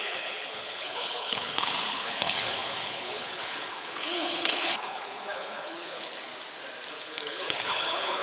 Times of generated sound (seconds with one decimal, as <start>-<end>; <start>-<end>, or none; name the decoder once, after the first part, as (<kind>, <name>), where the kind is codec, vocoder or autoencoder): 0.0-6.3 (codec, HILCodec); 6.9-8.2